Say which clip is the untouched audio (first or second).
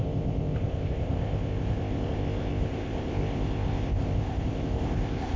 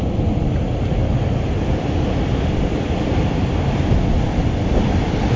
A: second